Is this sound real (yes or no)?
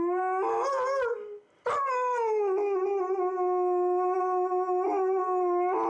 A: yes